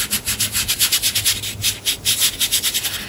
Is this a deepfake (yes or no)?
no